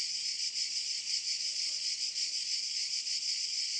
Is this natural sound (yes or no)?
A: no